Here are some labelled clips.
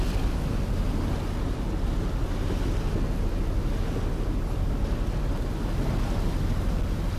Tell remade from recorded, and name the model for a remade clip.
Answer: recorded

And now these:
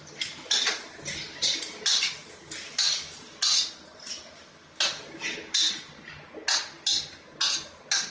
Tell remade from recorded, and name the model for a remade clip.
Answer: recorded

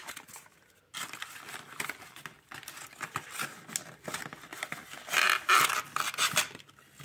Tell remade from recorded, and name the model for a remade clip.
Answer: recorded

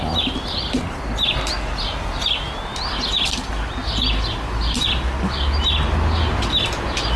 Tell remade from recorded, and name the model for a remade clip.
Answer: recorded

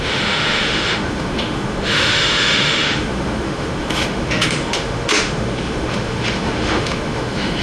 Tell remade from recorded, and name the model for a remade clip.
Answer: remade, autoencoder, DAC-VAE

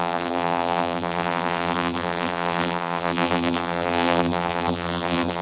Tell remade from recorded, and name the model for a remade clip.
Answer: remade, vocoder, BigVGAN v2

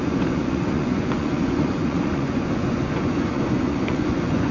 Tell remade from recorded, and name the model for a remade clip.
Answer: remade, vocoder, Vocos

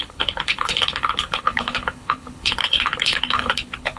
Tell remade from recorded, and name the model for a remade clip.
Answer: remade, codec, HILCodec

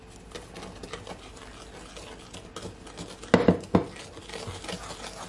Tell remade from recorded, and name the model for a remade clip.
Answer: recorded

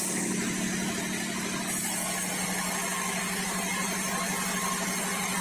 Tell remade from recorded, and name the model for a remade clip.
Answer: recorded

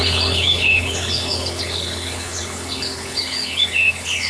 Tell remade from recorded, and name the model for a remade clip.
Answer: remade, codec, HILCodec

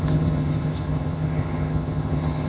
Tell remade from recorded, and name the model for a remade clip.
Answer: remade, vocoder, HiFi-GAN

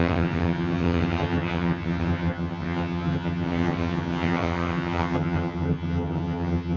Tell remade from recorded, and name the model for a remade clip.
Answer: remade, vocoder, HiFi-GAN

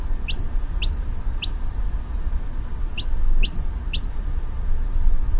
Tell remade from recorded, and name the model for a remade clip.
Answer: recorded